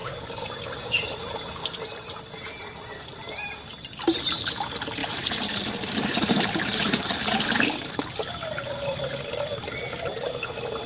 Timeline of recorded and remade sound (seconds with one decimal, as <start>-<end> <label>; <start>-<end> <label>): 0.0-1.2 remade; 1.2-1.6 recorded; 1.6-3.2 remade; 3.2-5.0 recorded; 5.0-7.9 remade; 7.9-10.9 recorded